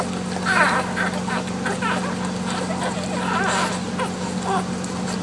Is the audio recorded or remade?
recorded